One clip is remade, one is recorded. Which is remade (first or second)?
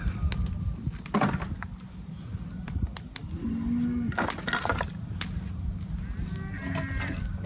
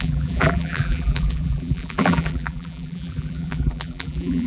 second